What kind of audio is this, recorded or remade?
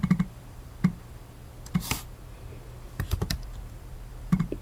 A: remade